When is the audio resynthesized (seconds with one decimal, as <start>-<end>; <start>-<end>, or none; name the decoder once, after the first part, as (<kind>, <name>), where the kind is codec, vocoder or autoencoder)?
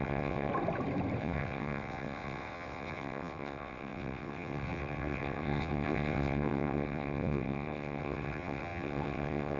0.0-0.5 (vocoder, WaveNeXt); 1.2-9.6